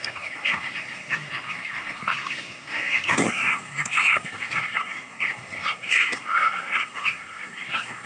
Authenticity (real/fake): fake